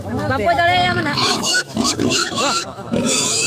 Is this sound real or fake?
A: fake